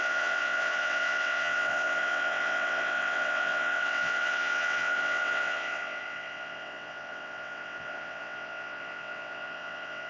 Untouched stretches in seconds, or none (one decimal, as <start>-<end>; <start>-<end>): none